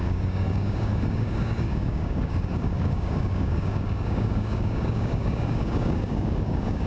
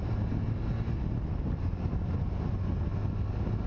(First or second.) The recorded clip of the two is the second